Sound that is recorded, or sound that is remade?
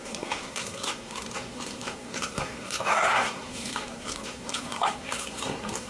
remade